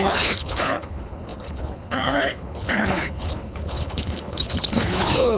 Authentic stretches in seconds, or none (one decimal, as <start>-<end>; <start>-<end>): none